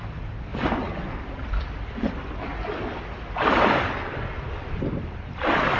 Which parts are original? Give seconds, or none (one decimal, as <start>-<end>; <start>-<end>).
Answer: 0.0-5.8